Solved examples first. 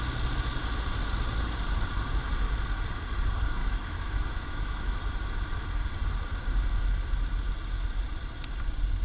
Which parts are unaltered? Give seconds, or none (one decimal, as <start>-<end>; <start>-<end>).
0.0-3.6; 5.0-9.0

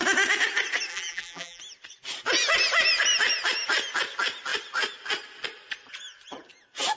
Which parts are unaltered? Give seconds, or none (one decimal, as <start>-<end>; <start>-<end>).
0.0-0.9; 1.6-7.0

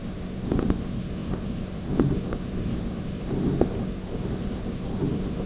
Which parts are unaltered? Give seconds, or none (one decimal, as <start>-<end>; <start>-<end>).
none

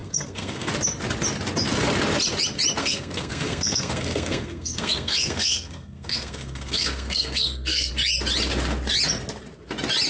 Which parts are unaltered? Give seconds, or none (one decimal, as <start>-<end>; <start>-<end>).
0.7-2.8; 7.9-10.1